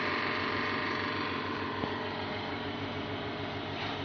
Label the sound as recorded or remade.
remade